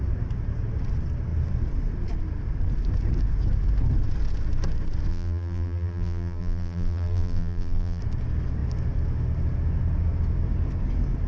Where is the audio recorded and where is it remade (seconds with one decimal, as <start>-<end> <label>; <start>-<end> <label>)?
0.0-5.1 recorded; 5.1-8.0 remade; 8.0-11.3 recorded